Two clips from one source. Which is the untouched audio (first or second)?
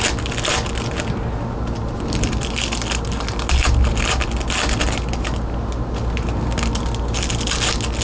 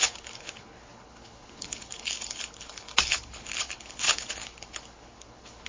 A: first